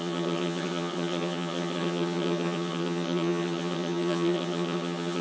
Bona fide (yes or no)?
no